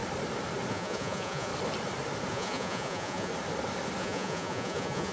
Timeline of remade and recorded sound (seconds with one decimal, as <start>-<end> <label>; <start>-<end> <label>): 0.0-0.7 recorded; 0.7-1.5 remade; 1.5-2.3 recorded; 2.3-3.3 remade; 3.3-4.0 recorded; 4.0-5.1 remade